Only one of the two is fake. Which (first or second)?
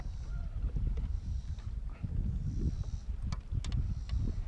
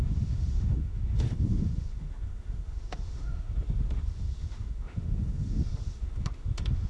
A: second